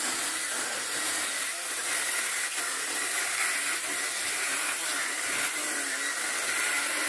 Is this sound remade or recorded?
recorded